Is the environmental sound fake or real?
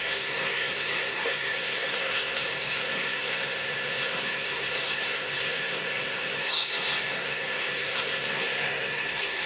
fake